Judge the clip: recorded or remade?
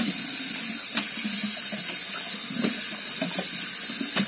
recorded